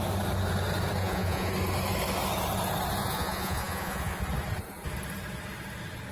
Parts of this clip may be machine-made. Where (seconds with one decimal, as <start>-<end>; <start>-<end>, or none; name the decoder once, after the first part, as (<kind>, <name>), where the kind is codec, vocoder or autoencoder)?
1.0-1.5 (vocoder, Vocos); 3.0-4.2